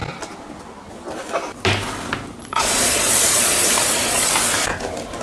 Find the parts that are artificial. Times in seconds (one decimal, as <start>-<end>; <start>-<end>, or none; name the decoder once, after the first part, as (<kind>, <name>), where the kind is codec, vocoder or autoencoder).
2.4-4.3 (vocoder, Vocos)